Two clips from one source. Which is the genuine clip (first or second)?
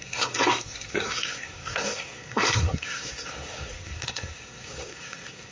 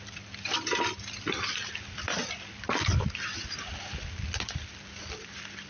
second